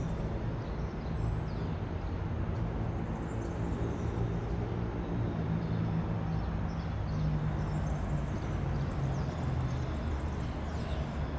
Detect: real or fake real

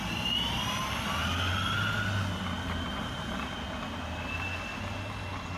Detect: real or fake real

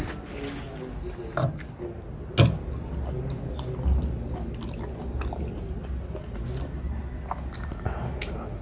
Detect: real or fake real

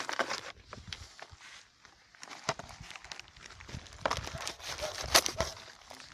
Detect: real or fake real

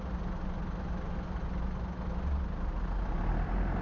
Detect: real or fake real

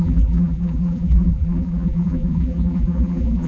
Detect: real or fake fake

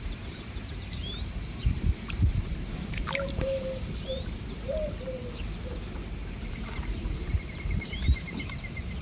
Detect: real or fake fake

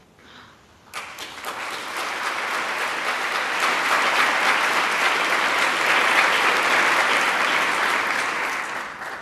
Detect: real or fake real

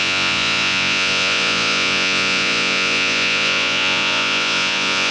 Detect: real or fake fake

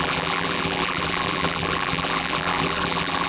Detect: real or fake fake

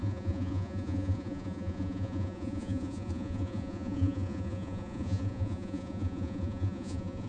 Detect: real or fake fake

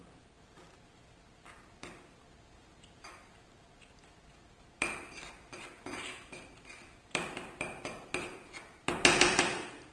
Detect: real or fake fake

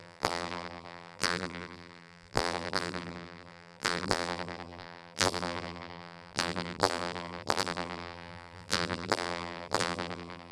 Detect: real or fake fake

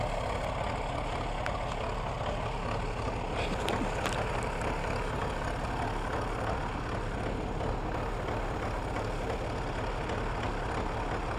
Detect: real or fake real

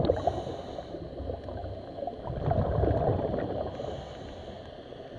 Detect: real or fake real